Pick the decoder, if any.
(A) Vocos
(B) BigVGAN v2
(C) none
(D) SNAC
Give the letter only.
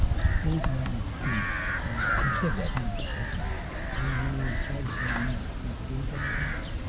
C